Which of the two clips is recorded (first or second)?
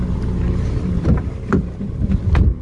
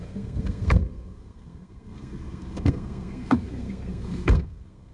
first